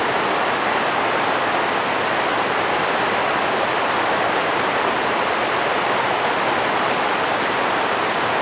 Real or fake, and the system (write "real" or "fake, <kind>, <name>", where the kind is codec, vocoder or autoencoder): real